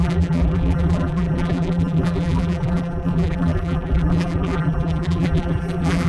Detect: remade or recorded remade